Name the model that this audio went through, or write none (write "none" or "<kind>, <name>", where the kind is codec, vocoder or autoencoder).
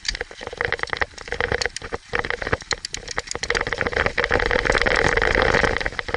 none